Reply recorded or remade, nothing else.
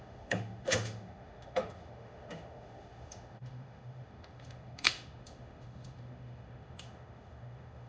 remade